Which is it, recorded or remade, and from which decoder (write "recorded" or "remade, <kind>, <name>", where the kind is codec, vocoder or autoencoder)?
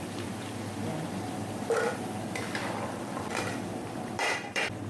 remade, vocoder, BigVGAN v2